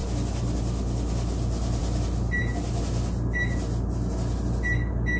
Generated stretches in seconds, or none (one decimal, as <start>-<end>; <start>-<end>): none